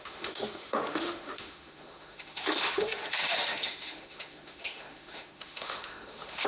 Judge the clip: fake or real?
fake